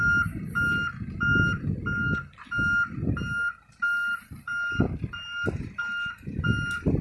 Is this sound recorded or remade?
recorded